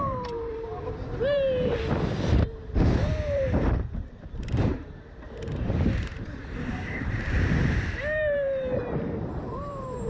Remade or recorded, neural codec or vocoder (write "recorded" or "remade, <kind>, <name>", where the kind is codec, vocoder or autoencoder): remade, vocoder, BigVGAN v2